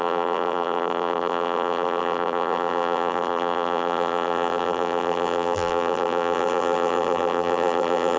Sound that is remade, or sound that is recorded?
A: remade